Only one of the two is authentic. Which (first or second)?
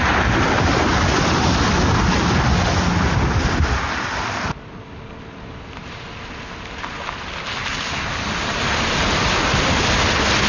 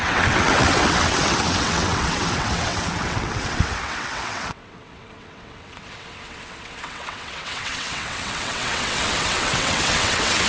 first